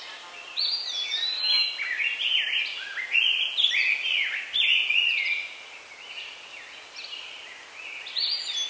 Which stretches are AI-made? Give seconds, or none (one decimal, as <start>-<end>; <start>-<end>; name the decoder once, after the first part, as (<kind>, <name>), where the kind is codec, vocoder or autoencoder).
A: none